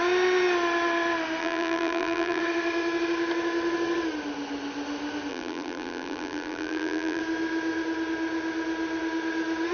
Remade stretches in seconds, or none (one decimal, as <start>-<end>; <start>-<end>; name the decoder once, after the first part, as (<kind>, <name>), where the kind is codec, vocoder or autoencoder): 1.4-2.4 (vocoder, BigVGAN v2); 5.3-7.2